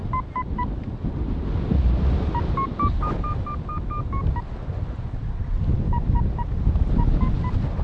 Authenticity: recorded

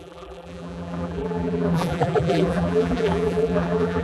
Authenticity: remade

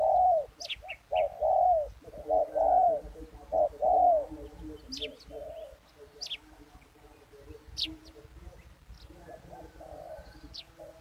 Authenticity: recorded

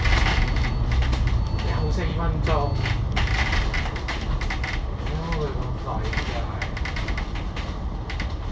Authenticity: recorded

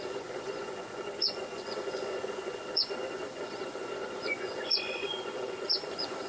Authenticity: remade